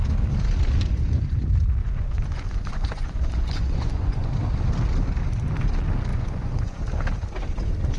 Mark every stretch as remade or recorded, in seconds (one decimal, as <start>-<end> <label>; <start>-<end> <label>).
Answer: 0.0-1.8 recorded; 1.8-4.3 remade; 4.3-6.1 recorded; 6.1-6.8 remade; 6.8-8.0 recorded